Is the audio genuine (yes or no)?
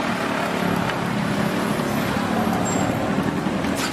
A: yes